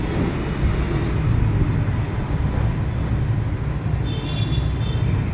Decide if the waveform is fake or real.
real